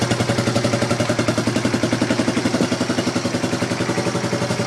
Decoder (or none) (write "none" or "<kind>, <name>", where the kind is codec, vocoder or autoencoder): none